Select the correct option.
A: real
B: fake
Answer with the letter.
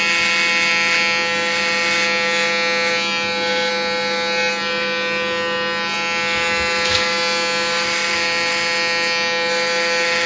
A